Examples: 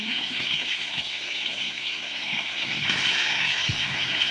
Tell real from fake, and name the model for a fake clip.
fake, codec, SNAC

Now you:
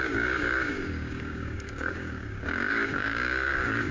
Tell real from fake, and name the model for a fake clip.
fake, codec, DAC